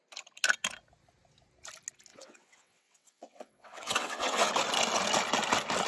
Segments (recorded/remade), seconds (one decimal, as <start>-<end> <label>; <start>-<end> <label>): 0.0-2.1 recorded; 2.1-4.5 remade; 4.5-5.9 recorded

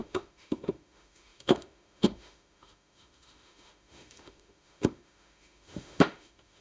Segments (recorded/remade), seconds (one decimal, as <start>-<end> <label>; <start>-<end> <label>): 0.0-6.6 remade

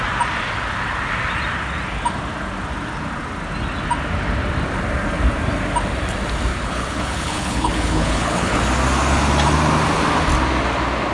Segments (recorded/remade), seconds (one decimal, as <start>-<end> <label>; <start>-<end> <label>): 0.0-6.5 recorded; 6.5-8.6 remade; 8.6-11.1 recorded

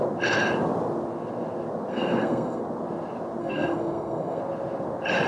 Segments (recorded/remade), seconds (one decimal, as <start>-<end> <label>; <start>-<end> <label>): 0.0-1.9 recorded; 1.9-2.6 remade; 2.6-3.4 recorded; 3.4-4.4 remade; 4.4-5.3 recorded

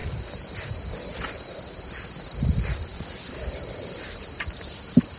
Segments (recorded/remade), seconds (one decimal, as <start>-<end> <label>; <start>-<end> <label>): 0.0-0.5 remade; 0.5-2.9 recorded; 2.9-5.2 remade

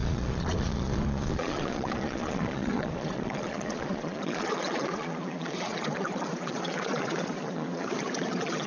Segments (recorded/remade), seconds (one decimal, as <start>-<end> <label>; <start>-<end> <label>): 0.0-8.7 remade

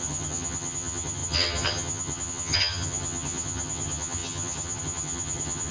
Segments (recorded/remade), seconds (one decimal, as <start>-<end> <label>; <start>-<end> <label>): 0.0-5.7 remade